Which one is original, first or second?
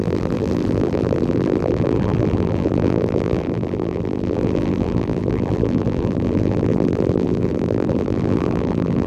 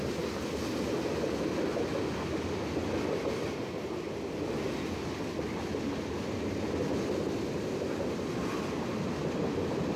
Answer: second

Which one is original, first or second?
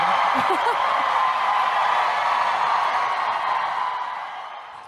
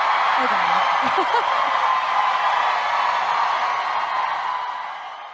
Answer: second